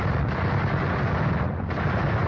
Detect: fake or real real